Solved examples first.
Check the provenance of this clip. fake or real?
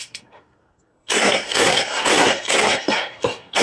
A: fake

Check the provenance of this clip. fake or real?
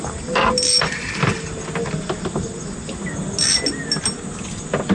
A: real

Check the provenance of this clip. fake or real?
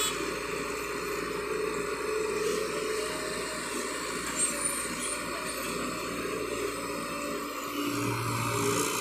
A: real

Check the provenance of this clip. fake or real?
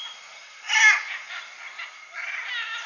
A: real